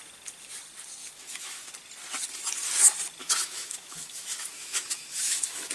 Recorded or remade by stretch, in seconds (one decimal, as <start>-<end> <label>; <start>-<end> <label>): 0.0-1.0 recorded; 1.0-1.7 remade; 1.7-3.2 recorded; 3.2-5.7 remade